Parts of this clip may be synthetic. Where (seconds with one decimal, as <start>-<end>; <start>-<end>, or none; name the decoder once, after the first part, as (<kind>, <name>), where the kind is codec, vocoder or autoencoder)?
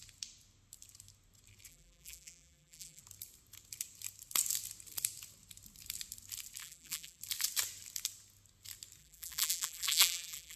1.7-3.0 (vocoder, BigVGAN v2); 6.6-7.2; 9.0-10.6